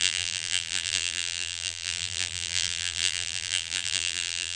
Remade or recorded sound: remade